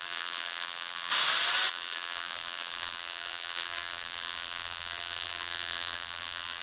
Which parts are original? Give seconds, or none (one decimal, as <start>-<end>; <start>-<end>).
1.1-1.7